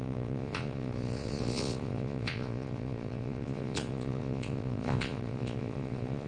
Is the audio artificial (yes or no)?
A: yes